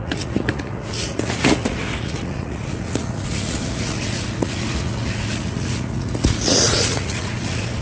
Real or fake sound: fake